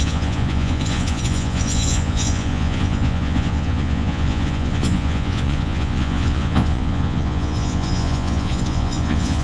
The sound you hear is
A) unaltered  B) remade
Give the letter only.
B